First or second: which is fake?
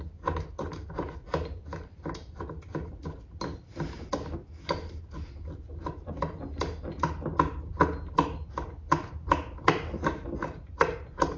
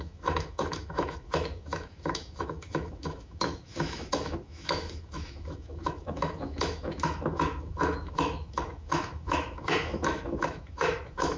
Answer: second